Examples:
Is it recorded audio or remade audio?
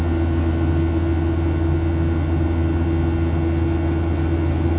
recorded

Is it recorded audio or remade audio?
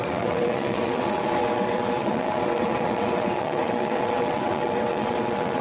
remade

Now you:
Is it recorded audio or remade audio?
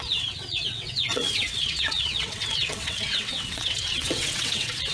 remade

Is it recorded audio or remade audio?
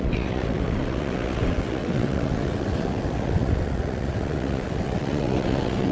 remade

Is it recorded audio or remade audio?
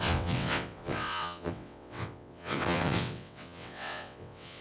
remade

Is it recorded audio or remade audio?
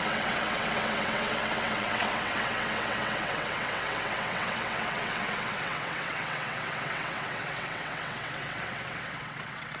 remade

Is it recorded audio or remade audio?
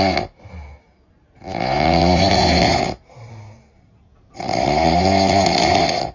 recorded